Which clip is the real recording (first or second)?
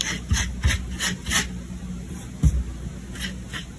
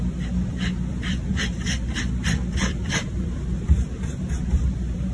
first